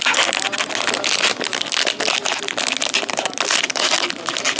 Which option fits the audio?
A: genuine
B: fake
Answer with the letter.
A